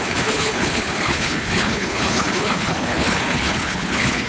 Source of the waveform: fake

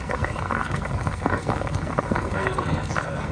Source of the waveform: fake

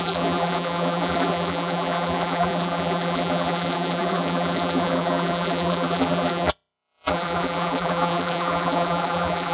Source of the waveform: fake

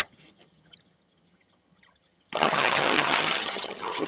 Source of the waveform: fake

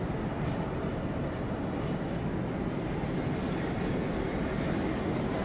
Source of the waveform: real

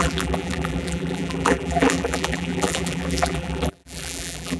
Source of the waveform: fake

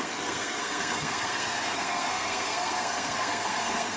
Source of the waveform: fake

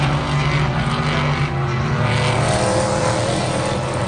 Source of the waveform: real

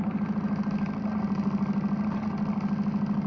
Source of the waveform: real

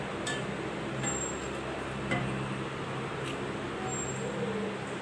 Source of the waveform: real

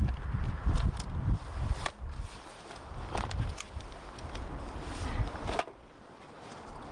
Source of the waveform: real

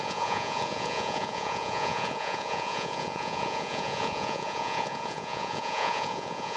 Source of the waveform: fake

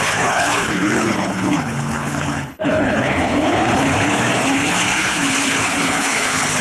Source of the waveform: fake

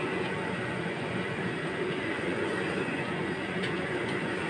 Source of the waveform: fake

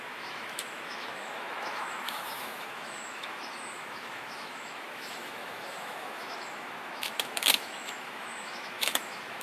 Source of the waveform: fake